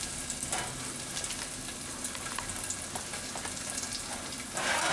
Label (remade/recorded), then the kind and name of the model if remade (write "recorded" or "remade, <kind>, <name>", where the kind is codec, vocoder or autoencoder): recorded